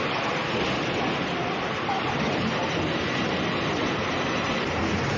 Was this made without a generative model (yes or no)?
yes